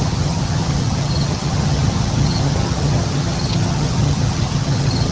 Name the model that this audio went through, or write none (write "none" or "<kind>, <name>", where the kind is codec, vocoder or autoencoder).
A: vocoder, HiFi-GAN